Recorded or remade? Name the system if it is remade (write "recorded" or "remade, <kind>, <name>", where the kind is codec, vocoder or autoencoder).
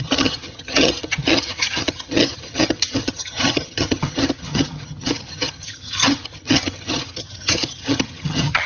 remade, vocoder, HiFi-GAN